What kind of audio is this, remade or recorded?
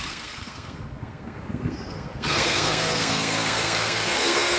remade